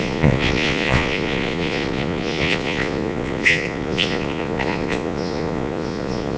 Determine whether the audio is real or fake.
fake